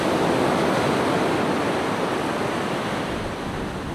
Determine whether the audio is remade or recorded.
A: recorded